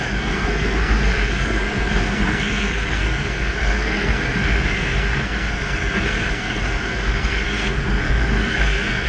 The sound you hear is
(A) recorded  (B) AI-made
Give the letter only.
B